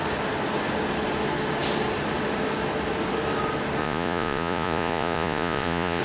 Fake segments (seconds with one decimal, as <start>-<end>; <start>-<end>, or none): 3.8-6.0